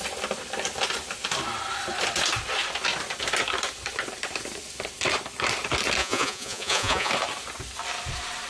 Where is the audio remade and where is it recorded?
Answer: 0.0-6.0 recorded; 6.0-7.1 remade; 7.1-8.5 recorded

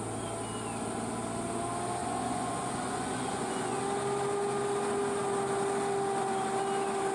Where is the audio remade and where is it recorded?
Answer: 0.0-2.0 recorded; 2.0-3.8 remade; 3.8-7.1 recorded

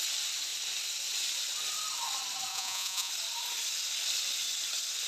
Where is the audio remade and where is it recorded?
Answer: 0.0-2.5 recorded; 2.5-3.1 remade; 3.1-5.1 recorded

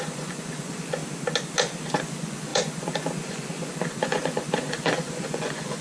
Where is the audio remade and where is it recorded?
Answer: 0.0-1.0 remade; 1.0-2.0 recorded; 2.0-5.8 remade

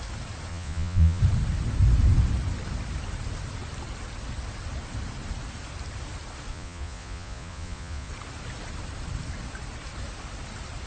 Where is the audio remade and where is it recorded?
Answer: 0.0-0.5 recorded; 0.5-1.2 remade; 1.2-6.5 recorded; 6.5-8.1 remade; 8.1-10.9 recorded

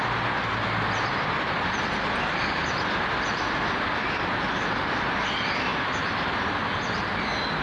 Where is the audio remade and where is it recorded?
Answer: 0.0-7.6 recorded

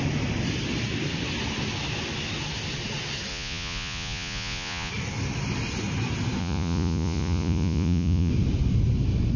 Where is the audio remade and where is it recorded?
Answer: 0.0-3.3 recorded; 3.3-4.9 remade; 4.9-6.4 recorded; 6.4-8.3 remade; 8.3-9.4 recorded

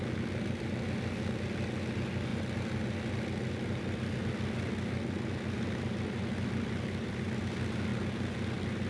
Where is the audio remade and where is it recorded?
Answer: 0.0-8.9 recorded